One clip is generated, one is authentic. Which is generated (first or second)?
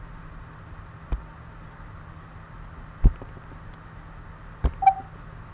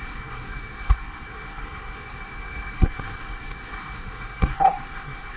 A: second